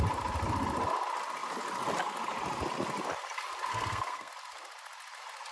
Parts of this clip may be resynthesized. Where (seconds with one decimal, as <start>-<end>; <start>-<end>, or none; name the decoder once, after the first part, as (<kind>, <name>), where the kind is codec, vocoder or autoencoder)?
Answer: 3.7-4.3 (codec, SNAC)